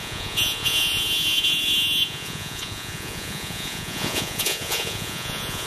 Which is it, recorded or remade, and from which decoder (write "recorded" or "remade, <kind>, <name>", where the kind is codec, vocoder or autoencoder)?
remade, vocoder, Vocos